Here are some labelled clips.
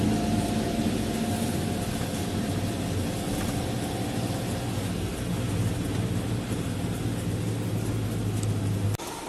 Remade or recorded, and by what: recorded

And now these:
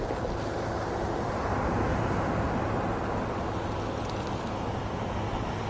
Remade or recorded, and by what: recorded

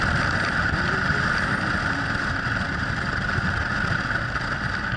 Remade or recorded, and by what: recorded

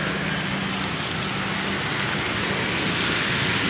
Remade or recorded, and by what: recorded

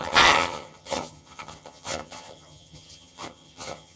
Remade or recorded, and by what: remade, vocoder, HiFi-GAN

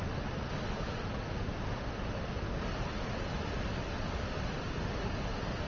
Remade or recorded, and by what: recorded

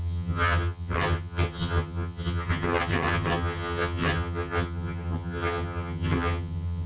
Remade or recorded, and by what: remade, vocoder, HiFi-GAN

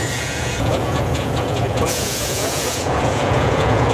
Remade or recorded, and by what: remade, vocoder, Vocos